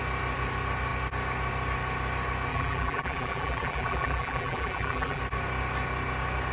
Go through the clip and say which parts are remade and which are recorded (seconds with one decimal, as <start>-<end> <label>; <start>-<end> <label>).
0.0-2.5 recorded; 2.5-5.2 remade; 5.2-6.5 recorded